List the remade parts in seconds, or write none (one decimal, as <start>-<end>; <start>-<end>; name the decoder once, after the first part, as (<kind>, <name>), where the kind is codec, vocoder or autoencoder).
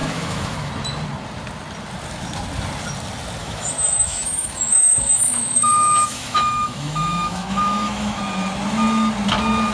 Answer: 0.0-0.7 (autoencoder, DAC-VAE); 3.4-8.2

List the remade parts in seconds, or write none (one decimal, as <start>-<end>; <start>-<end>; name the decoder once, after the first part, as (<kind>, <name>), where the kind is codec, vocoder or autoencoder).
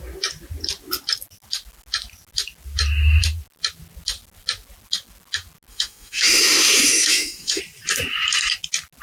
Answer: 5.7-7.6 (autoencoder, DAC-VAE)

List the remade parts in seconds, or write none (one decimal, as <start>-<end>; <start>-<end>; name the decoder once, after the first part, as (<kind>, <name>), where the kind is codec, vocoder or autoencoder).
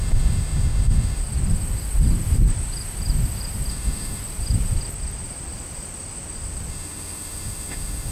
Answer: 0.0-1.2 (autoencoder, DAC-VAE); 3.7-4.2; 6.7-8.1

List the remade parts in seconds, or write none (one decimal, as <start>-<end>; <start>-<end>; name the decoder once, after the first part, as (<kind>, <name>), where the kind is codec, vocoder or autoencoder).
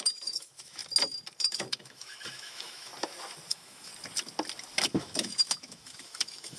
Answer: 0.0-0.8 (autoencoder, DAC-VAE); 1.4-2.9; 3.5-3.9; 4.9-6.6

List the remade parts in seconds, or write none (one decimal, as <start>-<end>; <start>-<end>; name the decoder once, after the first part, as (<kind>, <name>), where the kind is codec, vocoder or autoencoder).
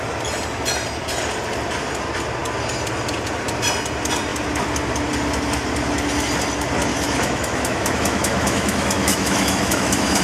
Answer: 6.9-10.2 (autoencoder, DAC-VAE)